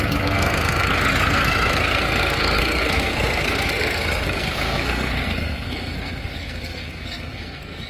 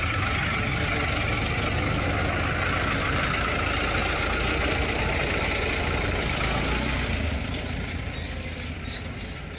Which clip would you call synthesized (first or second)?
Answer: first